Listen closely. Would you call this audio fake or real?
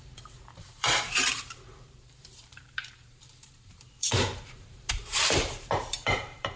fake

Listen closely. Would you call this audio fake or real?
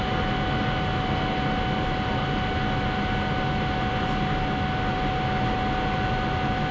real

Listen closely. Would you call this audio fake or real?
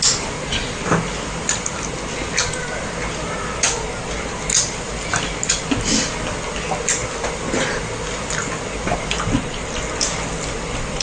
real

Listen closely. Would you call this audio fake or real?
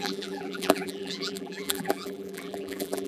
fake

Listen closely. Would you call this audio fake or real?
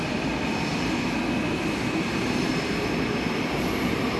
real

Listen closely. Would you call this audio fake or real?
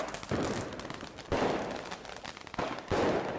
fake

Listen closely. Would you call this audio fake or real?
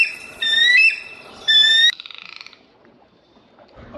fake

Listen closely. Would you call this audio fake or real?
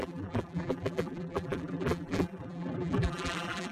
fake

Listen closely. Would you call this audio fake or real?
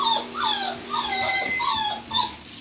real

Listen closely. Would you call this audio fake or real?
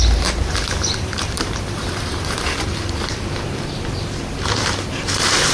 fake